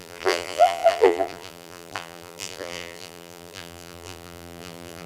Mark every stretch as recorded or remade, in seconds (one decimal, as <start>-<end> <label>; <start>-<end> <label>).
0.0-5.1 remade